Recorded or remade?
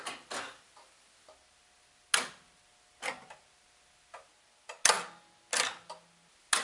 recorded